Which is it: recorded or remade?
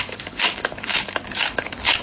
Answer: remade